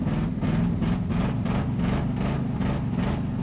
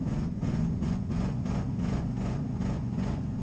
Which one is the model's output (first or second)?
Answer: second